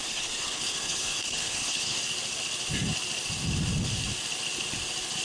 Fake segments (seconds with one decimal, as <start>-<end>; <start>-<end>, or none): 0.0-2.0